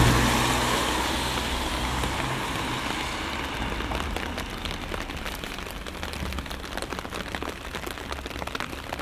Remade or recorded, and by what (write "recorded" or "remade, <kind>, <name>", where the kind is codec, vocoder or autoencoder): recorded